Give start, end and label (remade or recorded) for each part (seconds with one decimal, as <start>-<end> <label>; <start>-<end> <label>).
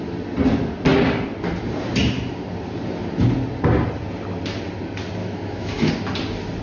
0.0-5.2 recorded; 5.2-5.9 remade; 5.9-6.6 recorded